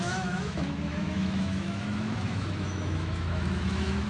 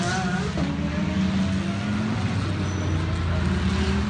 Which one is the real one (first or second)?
second